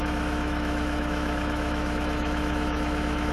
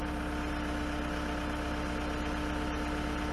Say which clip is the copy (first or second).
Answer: first